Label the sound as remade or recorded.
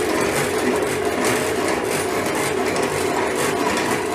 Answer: recorded